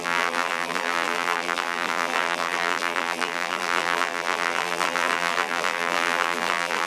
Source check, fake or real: fake